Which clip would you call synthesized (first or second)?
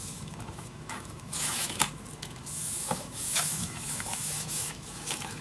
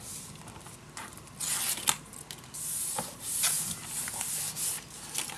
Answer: first